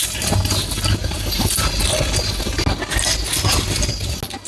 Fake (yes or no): no